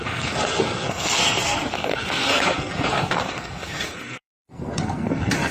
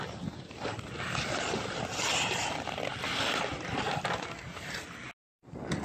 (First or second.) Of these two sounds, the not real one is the first